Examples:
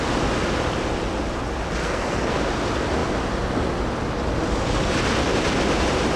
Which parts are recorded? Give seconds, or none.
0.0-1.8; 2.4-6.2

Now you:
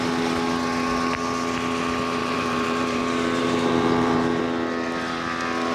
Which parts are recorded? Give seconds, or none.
0.0-2.2; 3.0-3.4; 4.4-5.7